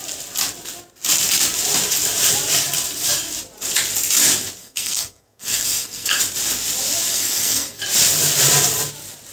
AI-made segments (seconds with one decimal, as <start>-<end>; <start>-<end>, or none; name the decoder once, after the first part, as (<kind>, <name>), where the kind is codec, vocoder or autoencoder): 4.6-6.2 (codec, SNAC); 7.1-7.8